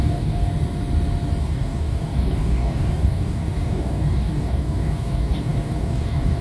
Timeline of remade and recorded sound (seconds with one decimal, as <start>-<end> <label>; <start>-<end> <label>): 0.0-0.5 remade; 0.5-1.4 recorded; 1.4-6.4 remade